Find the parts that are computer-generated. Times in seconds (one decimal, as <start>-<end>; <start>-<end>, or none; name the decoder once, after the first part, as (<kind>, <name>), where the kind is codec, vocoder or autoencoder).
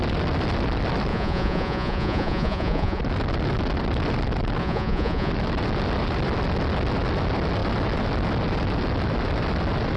1.1-3.0 (vocoder, Vocos); 4.6-5.3